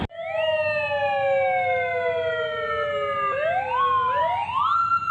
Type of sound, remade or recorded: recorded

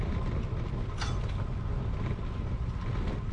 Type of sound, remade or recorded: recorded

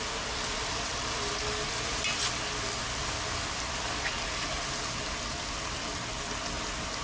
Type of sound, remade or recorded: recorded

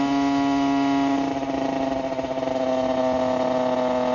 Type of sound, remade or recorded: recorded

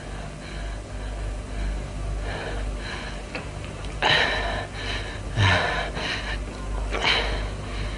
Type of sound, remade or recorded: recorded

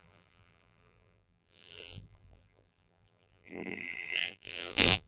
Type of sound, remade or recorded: remade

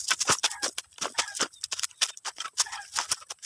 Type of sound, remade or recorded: remade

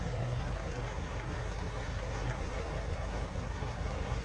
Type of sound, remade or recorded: remade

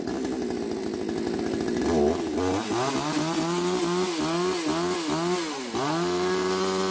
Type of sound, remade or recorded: recorded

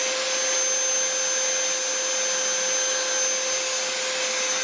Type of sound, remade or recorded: recorded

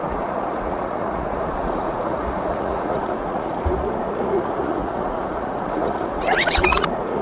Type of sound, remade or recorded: remade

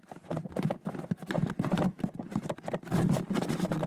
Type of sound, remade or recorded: remade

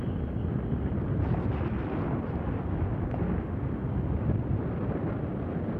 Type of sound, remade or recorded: recorded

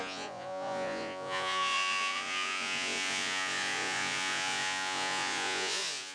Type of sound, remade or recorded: remade